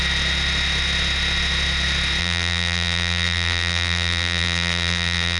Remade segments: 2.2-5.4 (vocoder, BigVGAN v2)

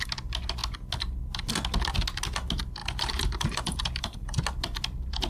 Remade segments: 2.8-4.4 (vocoder, BigVGAN v2)

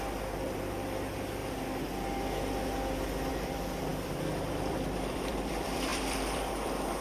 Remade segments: 0.0-1.4 (vocoder, BigVGAN v2); 3.3-7.0